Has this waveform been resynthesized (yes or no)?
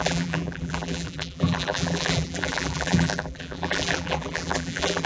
yes